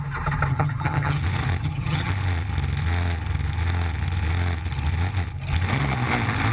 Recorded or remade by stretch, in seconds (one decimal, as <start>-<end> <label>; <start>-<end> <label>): 0.0-0.5 recorded; 0.5-1.2 remade; 1.2-1.6 recorded; 1.6-2.1 remade; 2.1-6.5 recorded